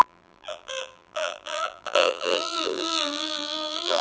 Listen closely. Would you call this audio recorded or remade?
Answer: remade